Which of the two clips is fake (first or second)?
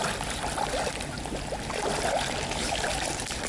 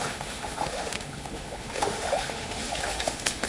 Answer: second